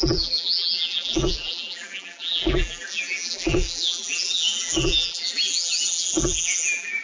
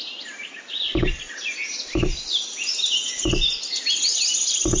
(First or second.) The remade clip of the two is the first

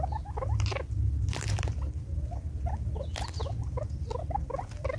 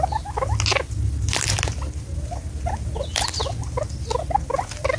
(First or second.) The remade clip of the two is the first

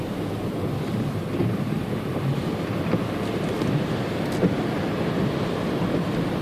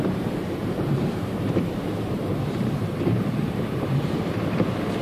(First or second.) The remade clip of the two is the second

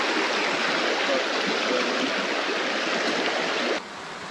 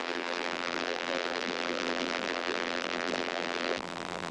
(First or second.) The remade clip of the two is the second